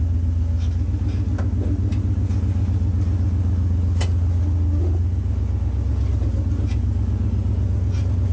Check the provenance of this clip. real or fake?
real